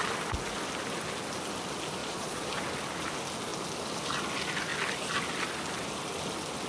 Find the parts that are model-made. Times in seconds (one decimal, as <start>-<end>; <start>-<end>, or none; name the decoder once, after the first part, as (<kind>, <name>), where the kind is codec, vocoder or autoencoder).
2.0-2.5 (vocoder, Vocos)